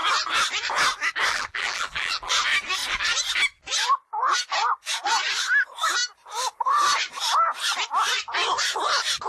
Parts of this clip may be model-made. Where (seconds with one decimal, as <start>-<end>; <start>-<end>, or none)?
1.3-2.3